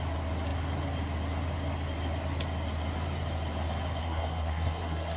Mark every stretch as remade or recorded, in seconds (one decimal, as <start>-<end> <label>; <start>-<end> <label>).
0.0-4.0 recorded; 4.0-5.2 remade